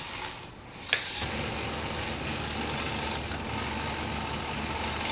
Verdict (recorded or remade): recorded